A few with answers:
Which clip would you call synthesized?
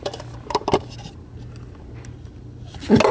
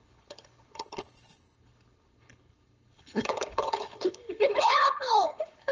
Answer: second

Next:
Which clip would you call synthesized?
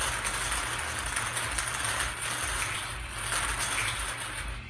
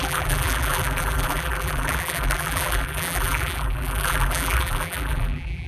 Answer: second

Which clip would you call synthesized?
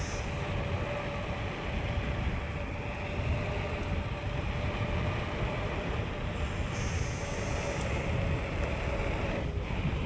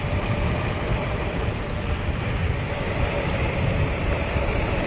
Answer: second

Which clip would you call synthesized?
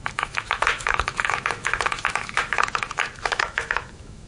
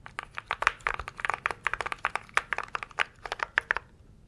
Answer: first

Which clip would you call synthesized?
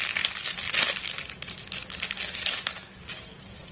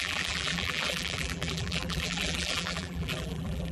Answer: second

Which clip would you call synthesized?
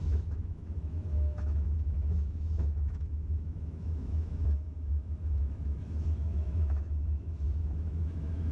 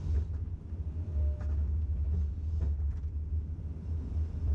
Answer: first